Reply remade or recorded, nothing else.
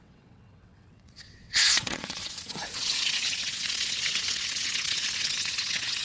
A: remade